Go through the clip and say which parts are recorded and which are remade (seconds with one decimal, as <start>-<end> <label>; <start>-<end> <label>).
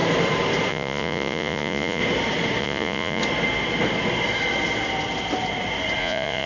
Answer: 0.0-0.7 recorded; 0.7-2.0 remade; 2.0-2.6 recorded; 2.6-3.2 remade; 3.2-6.0 recorded; 6.0-6.5 remade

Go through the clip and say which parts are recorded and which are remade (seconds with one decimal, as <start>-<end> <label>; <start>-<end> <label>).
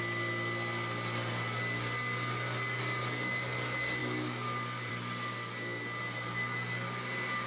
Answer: 0.0-7.5 recorded